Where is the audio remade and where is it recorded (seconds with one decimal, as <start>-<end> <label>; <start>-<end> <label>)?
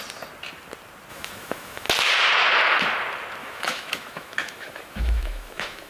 0.0-1.1 recorded; 1.1-1.9 remade; 1.9-3.4 recorded; 3.4-5.9 remade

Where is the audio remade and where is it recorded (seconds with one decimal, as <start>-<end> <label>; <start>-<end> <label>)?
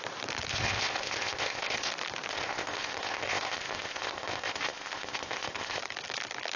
0.0-0.5 recorded; 0.5-1.9 remade; 1.9-2.3 recorded; 2.3-5.8 remade; 5.8-6.6 recorded